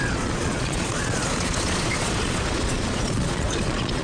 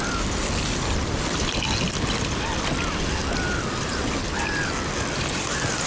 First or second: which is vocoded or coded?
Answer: first